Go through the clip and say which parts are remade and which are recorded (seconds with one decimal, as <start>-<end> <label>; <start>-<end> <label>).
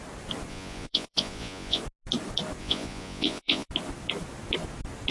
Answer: 0.0-0.5 recorded; 0.5-1.8 remade; 1.8-2.6 recorded; 2.6-3.7 remade; 3.7-5.1 recorded